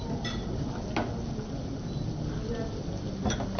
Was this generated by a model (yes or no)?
no